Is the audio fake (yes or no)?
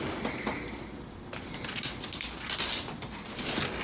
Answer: no